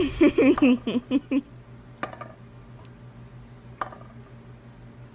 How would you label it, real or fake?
real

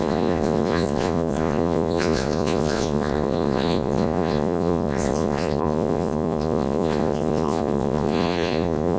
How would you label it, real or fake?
fake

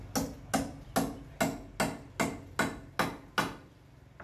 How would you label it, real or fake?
real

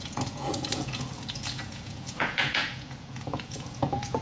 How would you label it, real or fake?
fake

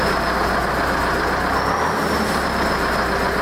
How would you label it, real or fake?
real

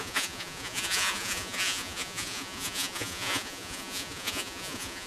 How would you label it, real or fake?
fake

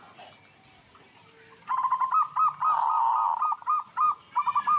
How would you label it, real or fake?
real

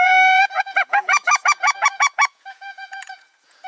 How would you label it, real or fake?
fake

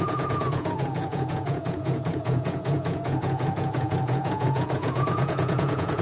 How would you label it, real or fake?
fake